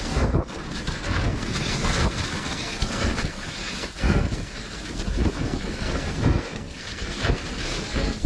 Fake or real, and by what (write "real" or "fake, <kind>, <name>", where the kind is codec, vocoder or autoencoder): fake, codec, SNAC